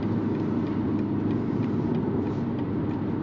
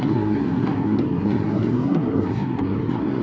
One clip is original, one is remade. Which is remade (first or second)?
second